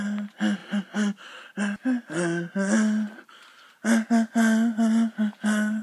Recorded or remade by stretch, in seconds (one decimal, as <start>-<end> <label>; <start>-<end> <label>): 0.0-5.8 recorded